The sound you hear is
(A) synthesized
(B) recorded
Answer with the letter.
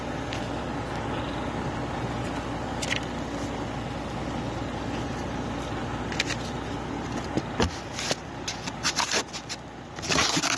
B